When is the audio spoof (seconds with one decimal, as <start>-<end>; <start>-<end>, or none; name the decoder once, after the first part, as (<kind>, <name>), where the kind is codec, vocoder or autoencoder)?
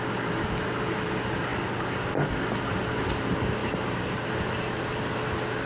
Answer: 3.6-4.3 (vocoder, BigVGAN v2)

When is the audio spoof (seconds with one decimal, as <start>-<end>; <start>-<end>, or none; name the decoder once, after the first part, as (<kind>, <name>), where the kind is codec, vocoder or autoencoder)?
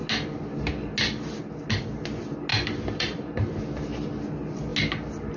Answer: 2.5-3.6 (vocoder, BigVGAN v2)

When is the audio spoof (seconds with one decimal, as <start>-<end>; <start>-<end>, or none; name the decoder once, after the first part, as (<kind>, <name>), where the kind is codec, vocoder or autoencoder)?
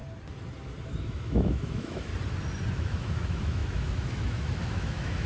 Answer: 1.0-2.1 (autoencoder, DAC-VAE); 2.7-5.3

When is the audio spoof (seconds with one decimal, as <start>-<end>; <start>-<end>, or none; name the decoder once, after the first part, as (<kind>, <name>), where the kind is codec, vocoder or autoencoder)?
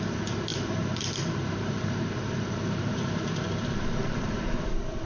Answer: 0.0-5.1 (vocoder, BigVGAN v2)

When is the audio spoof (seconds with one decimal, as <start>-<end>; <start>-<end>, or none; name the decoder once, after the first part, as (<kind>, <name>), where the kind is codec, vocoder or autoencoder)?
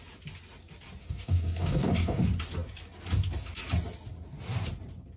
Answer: 1.0-2.2 (codec, DAC)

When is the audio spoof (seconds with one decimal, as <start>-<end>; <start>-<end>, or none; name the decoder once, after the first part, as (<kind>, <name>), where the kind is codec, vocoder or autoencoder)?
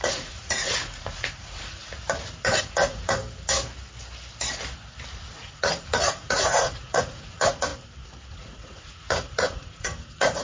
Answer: 0.0-1.9 (vocoder, Vocos); 2.6-3.2; 5.1-7.7; 8.3-10.4